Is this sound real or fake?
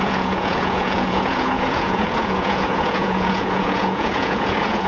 fake